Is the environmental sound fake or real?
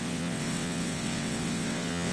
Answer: fake